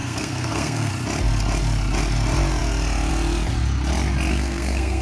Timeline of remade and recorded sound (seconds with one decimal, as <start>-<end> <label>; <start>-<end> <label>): 0.0-0.9 remade; 0.9-4.3 recorded; 4.3-5.0 remade